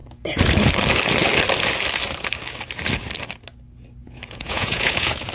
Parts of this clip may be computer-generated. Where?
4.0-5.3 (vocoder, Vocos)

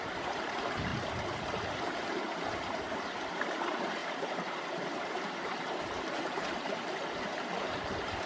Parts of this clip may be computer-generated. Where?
0.0-0.9 (vocoder, BigVGAN v2); 1.8-8.3

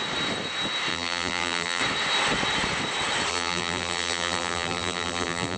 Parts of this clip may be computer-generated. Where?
0.9-1.8 (vocoder, BigVGAN v2); 3.3-5.6

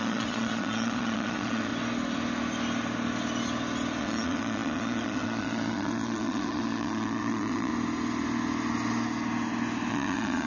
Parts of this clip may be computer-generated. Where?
0.0-1.7 (vocoder, Vocos); 4.0-7.7; 9.9-10.5